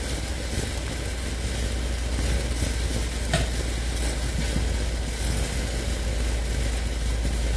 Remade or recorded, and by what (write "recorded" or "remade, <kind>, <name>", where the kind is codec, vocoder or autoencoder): recorded